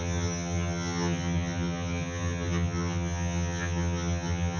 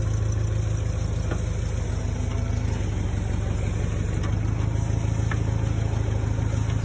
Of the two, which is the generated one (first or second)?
first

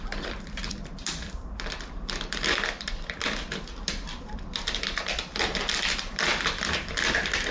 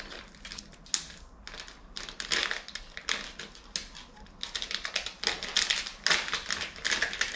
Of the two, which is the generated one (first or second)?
first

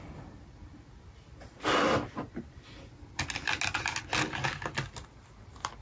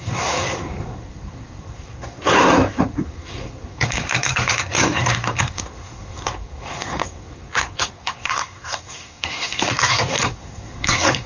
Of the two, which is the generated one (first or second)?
second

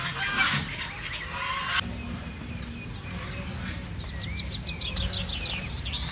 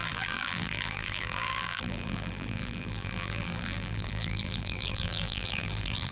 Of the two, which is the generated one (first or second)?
second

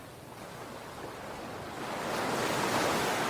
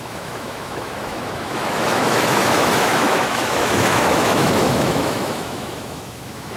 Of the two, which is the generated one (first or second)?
second